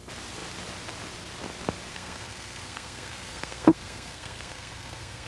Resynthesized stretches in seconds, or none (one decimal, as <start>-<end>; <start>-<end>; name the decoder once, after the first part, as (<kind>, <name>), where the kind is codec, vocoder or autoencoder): 1.9-5.3 (codec, SNAC)